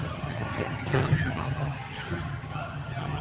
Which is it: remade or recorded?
remade